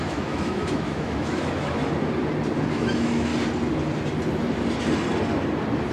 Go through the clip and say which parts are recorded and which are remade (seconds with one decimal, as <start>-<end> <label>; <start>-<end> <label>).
0.0-1.8 remade; 1.8-2.7 recorded; 2.7-3.3 remade; 3.3-5.9 recorded